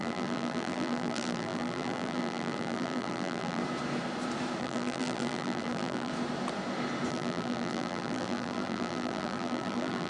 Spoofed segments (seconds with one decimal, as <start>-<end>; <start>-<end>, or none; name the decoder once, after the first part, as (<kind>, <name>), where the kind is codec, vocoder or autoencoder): 0.0-3.6 (vocoder, BigVGAN v2); 4.6-6.1; 7.1-10.1